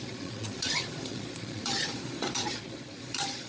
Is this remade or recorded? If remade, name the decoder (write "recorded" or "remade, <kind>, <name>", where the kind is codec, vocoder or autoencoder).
remade, vocoder, Vocos